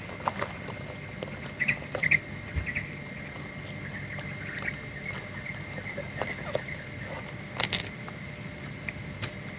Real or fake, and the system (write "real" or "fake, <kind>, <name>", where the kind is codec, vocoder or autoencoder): real